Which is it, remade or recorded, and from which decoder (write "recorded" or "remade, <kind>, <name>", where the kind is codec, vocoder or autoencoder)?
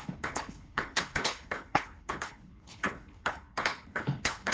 remade, codec, HILCodec